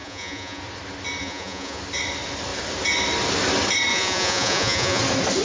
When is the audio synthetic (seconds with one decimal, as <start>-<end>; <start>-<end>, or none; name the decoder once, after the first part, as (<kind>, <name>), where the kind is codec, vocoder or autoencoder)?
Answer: 0.0-0.6 (vocoder, Vocos); 1.2-1.8; 3.9-5.0